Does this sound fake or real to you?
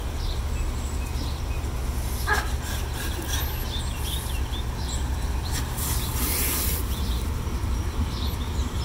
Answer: real